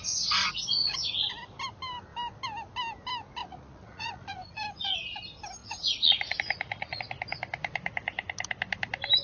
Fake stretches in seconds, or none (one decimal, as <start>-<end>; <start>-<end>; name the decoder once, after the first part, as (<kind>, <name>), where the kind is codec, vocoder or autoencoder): 3.4-4.6 (vocoder, Vocos); 5.6-7.0